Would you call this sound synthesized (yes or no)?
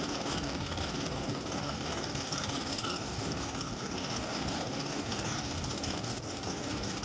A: yes